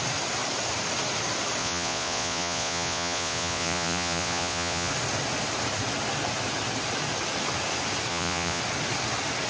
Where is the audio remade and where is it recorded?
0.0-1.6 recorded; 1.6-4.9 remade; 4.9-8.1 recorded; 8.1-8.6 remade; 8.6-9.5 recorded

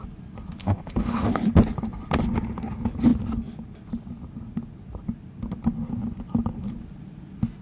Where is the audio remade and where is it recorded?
0.0-0.6 recorded; 0.6-1.3 remade; 1.3-7.6 recorded